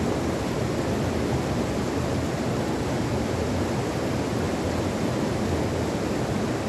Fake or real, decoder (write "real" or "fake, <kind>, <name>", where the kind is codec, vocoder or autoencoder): real